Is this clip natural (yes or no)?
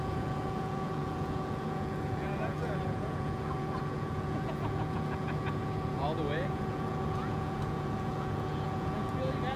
no